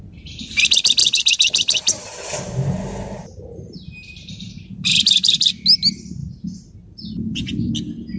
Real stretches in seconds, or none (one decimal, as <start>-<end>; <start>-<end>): 0.0-1.0; 5.5-6.2; 7.7-8.2